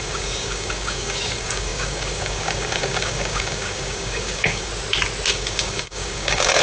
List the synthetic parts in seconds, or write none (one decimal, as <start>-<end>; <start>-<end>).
0.0-4.7; 5.3-6.6